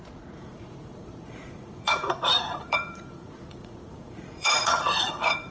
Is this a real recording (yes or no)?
no